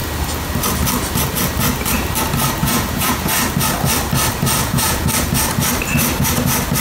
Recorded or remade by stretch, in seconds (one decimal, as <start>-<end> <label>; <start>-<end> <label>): 0.0-2.6 recorded; 2.6-3.3 remade; 3.3-4.6 recorded; 4.6-5.1 remade; 5.1-6.8 recorded